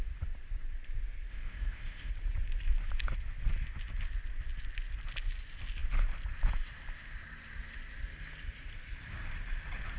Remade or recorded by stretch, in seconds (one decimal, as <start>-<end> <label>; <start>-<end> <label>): 0.0-1.3 recorded; 1.3-2.1 remade; 2.1-10.0 recorded